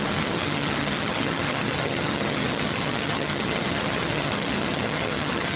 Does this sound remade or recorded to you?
remade